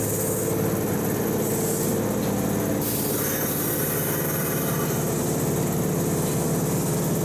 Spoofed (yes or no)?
no